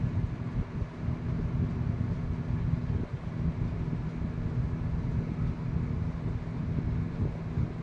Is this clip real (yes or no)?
yes